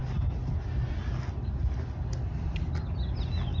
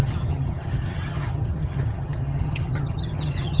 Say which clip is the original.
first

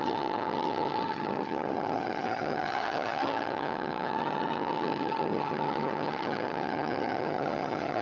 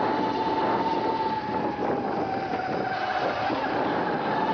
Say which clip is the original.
second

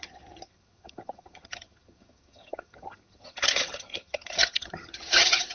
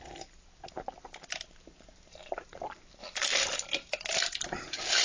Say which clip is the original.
second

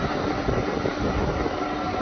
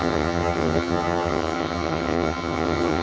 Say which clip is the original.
first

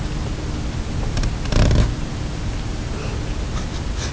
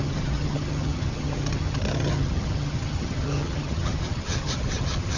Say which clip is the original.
first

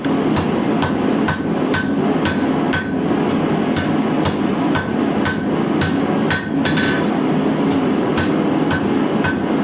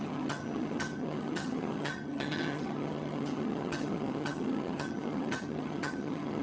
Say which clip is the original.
first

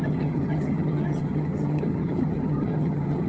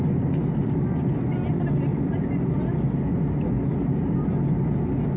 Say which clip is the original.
second